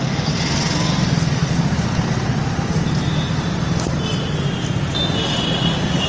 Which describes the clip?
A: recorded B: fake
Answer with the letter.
A